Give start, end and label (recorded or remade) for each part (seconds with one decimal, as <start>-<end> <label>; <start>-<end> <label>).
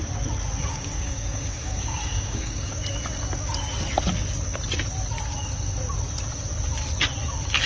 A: 0.0-0.7 recorded; 0.7-2.7 remade; 2.7-7.7 recorded